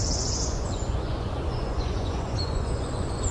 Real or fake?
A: fake